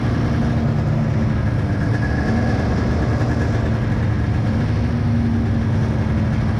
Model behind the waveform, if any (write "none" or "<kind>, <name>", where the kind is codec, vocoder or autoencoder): none